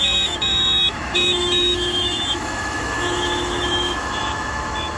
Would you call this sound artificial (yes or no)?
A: yes